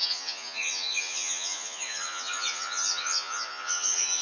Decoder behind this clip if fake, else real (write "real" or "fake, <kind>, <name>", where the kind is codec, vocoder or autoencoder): fake, vocoder, Vocos